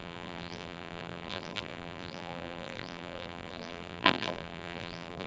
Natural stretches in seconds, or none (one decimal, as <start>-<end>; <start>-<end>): none

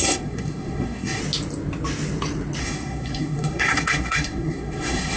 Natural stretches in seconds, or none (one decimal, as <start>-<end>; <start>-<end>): 1.2-2.6